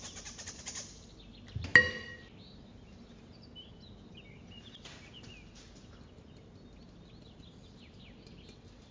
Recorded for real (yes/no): yes